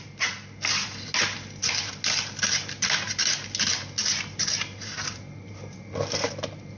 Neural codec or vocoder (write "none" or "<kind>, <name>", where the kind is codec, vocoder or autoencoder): none